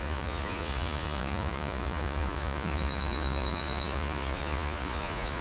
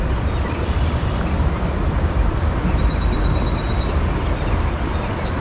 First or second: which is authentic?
second